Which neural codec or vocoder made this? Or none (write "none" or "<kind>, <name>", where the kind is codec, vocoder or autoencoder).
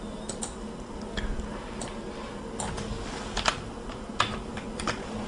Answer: none